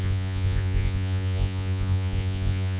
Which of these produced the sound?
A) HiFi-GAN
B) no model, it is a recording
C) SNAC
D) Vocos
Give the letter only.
D